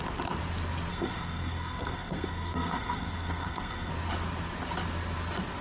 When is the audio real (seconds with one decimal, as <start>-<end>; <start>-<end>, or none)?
0.0-0.9; 3.9-5.6